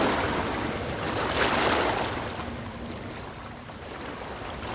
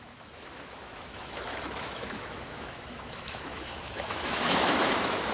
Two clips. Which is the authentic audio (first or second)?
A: first